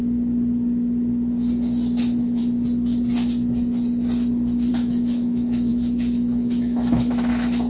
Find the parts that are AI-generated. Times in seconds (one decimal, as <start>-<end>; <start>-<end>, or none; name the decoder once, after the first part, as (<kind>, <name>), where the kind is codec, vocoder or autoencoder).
2.0-2.4 (autoencoder, DAC-VAE); 4.7-7.7